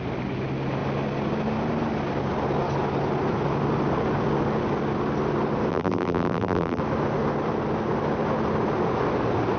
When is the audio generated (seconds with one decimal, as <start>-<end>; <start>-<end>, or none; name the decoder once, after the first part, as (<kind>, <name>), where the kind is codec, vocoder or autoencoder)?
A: 5.7-6.8 (vocoder, BigVGAN v2)